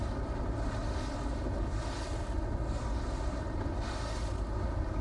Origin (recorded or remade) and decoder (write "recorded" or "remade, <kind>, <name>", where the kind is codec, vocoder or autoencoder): recorded